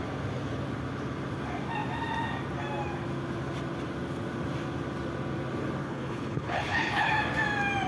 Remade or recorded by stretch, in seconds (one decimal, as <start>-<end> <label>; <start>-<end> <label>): 0.0-5.8 recorded; 5.8-7.1 remade; 7.1-7.9 recorded